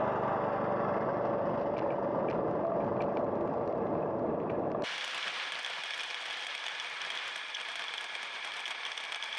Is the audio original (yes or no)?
yes